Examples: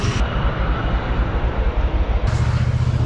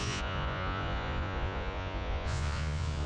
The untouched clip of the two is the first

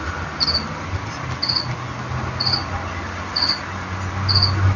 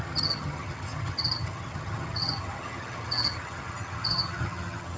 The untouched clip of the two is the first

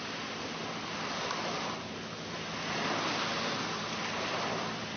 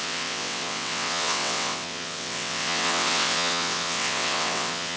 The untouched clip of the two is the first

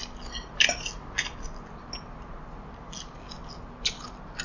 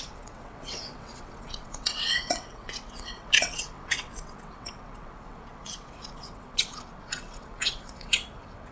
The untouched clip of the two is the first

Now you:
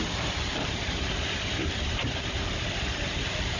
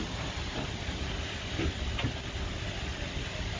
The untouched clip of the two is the second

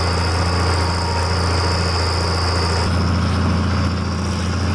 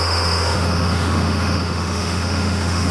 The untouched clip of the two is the first